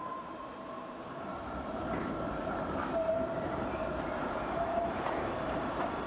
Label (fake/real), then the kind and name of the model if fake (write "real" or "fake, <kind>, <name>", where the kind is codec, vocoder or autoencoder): fake, vocoder, BigVGAN v2